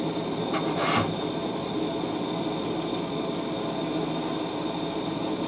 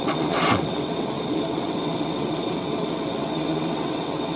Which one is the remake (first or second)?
second